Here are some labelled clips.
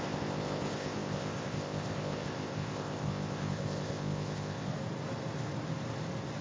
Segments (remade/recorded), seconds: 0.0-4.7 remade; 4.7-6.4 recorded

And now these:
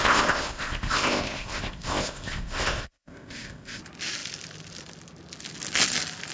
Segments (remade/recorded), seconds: 0.0-3.8 remade; 3.8-6.3 recorded